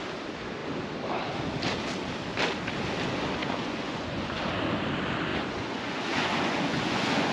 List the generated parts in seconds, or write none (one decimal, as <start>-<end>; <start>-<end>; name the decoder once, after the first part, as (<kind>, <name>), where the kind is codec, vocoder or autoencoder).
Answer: 3.4-4.4 (vocoder, Vocos); 5.3-7.3